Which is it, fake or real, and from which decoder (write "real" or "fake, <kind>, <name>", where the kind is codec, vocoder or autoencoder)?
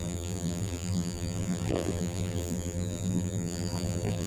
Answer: fake, vocoder, BigVGAN v2